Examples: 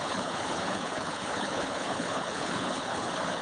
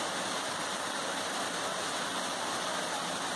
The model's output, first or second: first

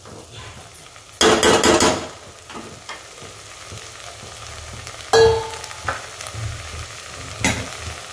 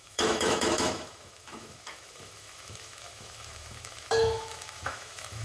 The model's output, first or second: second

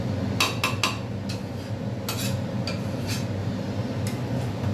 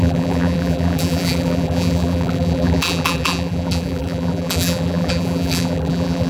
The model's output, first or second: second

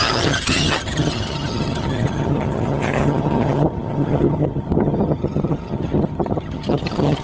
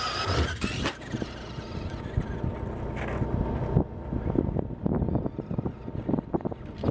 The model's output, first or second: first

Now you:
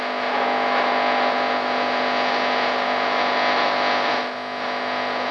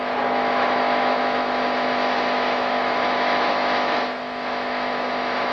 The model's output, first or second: second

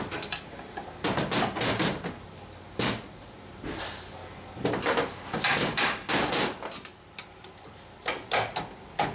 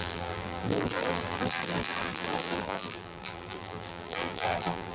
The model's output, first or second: second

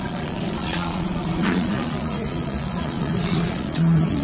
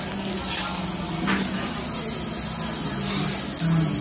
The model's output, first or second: first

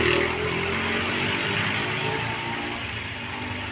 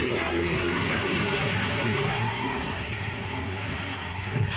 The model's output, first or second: second